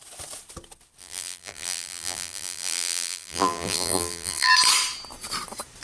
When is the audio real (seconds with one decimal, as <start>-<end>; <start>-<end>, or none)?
0.0-1.0; 4.5-5.8